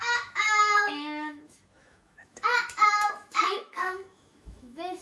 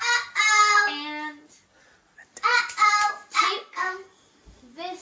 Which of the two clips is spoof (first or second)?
first